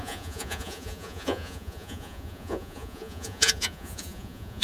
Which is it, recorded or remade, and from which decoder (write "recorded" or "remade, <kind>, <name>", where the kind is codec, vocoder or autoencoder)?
remade, vocoder, Vocos